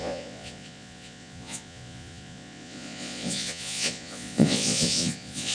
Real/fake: fake